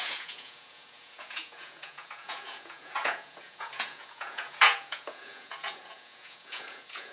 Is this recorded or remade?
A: remade